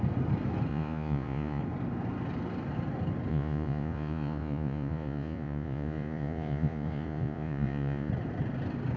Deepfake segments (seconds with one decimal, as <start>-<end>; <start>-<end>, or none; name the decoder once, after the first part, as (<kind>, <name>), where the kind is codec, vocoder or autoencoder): 0.7-1.6 (vocoder, Vocos); 3.3-8.1